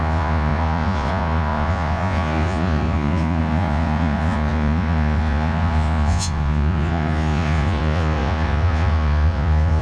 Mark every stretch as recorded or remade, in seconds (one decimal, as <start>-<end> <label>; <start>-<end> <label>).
0.0-9.8 remade